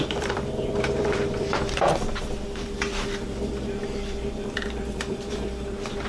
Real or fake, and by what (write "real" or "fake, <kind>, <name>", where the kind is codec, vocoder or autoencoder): fake, vocoder, BigVGAN v2